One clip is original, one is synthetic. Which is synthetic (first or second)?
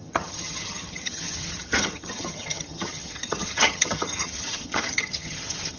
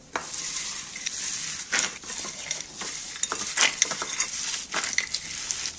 first